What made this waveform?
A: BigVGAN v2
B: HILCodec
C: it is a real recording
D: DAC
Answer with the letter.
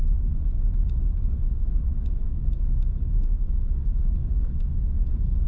D